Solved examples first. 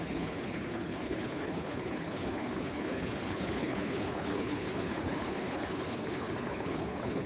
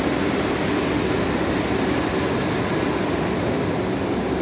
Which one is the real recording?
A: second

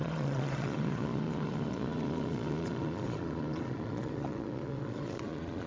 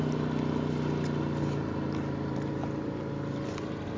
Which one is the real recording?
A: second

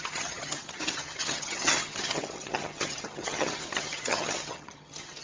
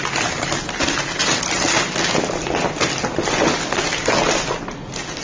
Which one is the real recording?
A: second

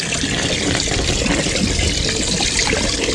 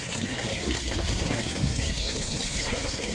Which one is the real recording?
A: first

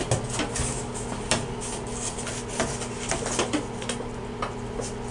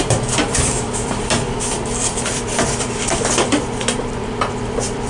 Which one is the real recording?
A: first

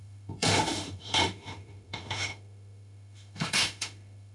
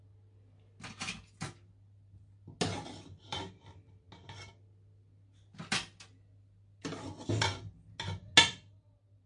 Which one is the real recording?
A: second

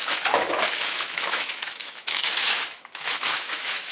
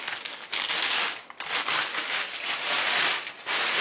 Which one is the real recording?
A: second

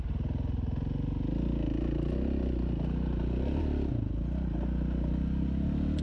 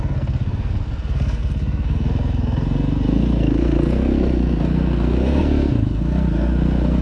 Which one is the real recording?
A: first